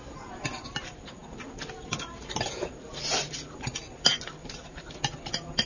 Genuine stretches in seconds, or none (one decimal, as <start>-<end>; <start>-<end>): 0.0-5.7